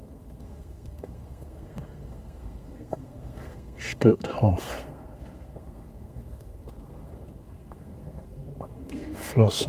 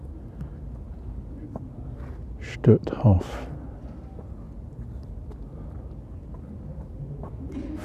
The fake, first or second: first